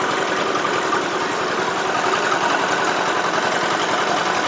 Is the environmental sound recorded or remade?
recorded